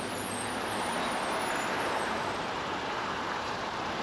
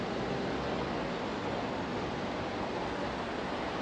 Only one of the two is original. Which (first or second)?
second